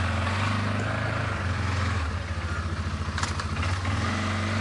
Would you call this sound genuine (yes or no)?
yes